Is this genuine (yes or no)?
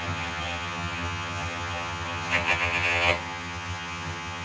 no